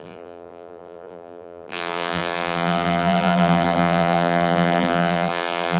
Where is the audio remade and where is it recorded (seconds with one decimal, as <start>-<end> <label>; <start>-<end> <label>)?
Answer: 0.0-5.8 remade